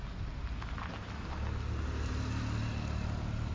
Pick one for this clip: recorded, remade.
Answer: recorded